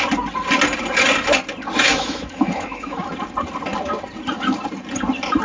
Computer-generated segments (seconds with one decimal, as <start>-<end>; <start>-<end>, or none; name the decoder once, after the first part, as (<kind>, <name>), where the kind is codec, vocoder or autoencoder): 1.9-3.1 (autoencoder, DAC-VAE)